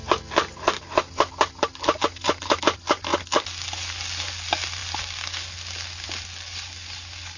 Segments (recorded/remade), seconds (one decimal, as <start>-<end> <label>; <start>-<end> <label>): 0.0-7.4 recorded